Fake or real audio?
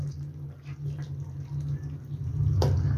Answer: real